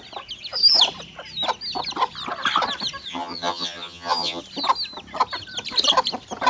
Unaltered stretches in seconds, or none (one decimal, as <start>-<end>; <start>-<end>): 0.0-3.1; 4.4-6.5